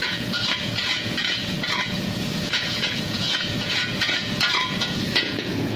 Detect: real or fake fake